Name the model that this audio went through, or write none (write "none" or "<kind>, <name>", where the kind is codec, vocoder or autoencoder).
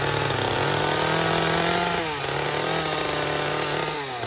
none